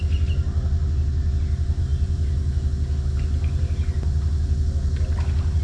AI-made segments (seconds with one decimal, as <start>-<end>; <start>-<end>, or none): none